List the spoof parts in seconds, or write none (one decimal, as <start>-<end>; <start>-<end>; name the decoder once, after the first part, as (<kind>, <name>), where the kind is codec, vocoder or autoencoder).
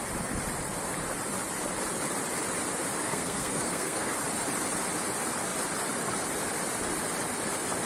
3.0-4.1 (codec, SNAC)